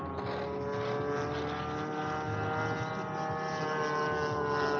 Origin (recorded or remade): recorded